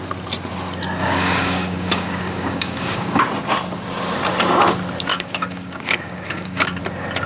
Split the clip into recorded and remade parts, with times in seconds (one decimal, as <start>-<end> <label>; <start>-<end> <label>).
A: 0.0-1.0 recorded; 1.0-3.2 remade; 3.2-5.1 recorded; 5.1-6.8 remade; 6.8-7.3 recorded